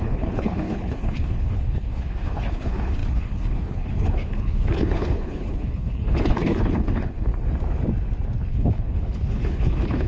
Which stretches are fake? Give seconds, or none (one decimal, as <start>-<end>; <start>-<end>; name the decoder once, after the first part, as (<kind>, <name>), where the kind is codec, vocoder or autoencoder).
0.0-7.3 (codec, HILCodec); 8.5-10.1